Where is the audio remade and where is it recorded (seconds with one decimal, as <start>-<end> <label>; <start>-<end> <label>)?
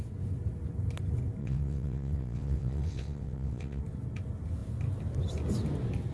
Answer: 0.0-1.4 recorded; 1.4-3.8 remade; 3.8-6.1 recorded